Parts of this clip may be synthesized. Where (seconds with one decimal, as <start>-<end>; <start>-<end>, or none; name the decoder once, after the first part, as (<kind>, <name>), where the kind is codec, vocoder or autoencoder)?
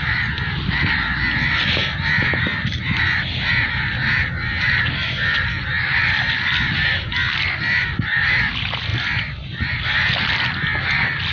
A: none